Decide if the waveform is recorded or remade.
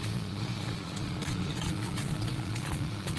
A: remade